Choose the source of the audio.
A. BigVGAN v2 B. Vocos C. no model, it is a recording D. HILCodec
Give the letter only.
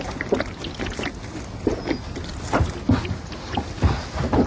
C